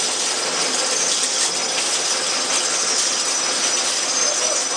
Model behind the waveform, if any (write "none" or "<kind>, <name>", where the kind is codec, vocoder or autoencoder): none